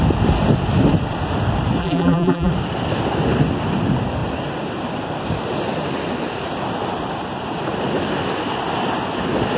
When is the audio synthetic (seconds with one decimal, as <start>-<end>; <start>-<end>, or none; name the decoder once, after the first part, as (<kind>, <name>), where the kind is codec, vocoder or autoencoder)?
1.8-2.5 (vocoder, BigVGAN v2)

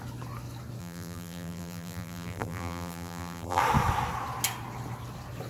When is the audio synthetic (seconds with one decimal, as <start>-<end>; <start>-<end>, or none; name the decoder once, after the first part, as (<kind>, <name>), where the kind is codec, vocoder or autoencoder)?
0.8-3.6 (vocoder, BigVGAN v2)

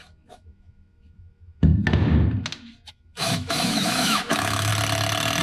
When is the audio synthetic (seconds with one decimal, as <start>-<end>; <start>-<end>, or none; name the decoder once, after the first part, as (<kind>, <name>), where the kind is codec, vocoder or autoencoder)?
0.0-1.7 (autoencoder, DAC-VAE); 2.9-4.7

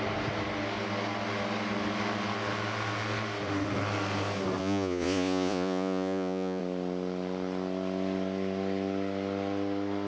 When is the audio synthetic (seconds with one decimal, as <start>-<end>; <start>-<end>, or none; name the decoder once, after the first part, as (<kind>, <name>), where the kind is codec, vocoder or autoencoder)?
4.6-6.6 (vocoder, Vocos)

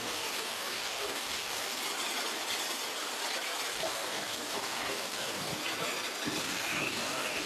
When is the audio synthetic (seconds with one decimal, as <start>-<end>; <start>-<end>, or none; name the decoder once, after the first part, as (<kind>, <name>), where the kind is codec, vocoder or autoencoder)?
0.0-1.8 (codec, DAC); 3.7-5.5; 6.4-7.5

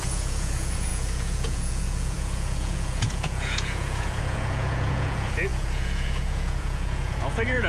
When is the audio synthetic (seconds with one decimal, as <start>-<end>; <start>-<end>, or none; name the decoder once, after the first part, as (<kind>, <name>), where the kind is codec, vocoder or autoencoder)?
0.0-7.7 (vocoder, Vocos)

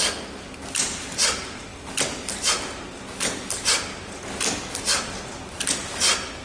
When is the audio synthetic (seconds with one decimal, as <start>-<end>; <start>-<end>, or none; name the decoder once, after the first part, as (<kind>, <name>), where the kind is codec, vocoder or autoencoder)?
none